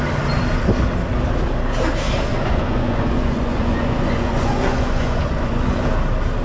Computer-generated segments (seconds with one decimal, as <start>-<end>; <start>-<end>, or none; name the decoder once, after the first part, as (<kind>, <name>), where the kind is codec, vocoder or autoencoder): 2.3-5.8 (vocoder, Vocos)